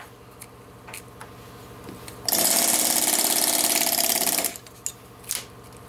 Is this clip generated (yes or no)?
no